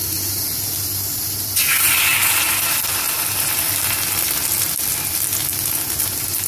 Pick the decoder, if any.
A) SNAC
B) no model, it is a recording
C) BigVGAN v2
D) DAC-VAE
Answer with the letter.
B